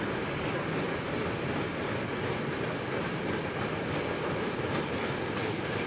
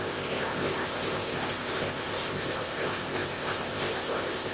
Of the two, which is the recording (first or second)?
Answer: first